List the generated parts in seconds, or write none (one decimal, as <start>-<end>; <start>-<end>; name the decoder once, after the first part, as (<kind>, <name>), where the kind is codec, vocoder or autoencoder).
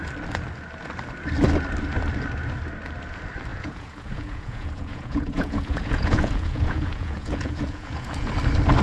3.5-8.3 (vocoder, Vocos)